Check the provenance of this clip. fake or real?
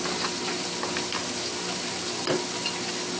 real